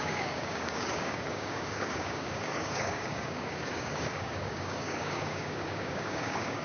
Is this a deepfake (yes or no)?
yes